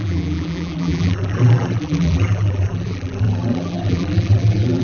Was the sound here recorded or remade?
remade